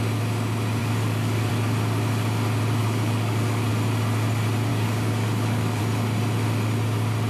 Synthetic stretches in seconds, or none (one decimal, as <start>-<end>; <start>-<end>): 0.8-1.5; 2.8-3.7; 4.7-5.8